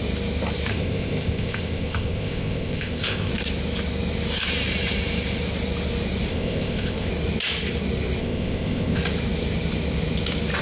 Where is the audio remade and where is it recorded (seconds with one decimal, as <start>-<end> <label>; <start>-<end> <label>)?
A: 0.0-0.7 recorded; 0.7-3.3 remade; 3.3-6.3 recorded; 6.3-7.1 remade; 7.1-8.2 recorded; 8.2-9.0 remade; 9.0-10.6 recorded